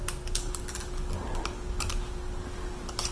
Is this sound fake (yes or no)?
no